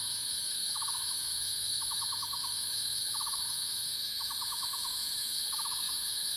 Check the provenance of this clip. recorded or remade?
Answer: remade